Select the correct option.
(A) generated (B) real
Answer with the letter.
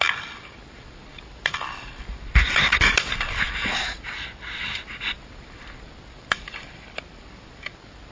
B